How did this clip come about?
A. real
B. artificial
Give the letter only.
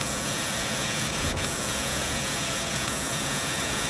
B